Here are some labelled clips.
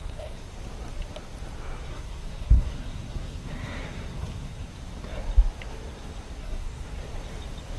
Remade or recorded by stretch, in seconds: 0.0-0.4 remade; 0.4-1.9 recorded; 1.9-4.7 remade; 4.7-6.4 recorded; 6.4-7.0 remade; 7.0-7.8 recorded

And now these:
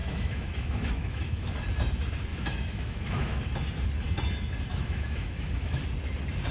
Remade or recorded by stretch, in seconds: 0.0-1.5 remade; 1.5-2.3 recorded; 2.3-3.4 remade; 3.4-4.7 recorded; 4.7-5.8 remade; 5.8-6.5 recorded

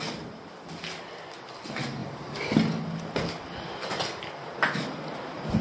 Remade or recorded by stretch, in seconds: 0.0-5.6 recorded